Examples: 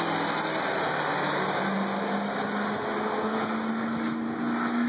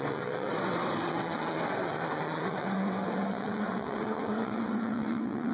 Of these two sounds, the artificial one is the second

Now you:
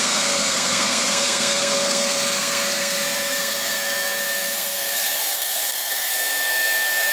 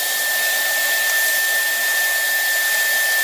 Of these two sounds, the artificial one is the first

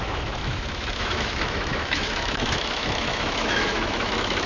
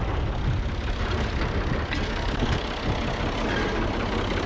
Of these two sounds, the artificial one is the first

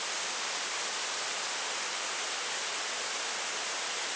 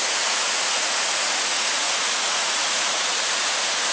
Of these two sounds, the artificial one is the second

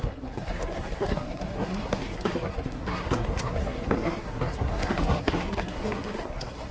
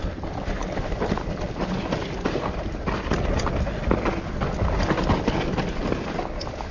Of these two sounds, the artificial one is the first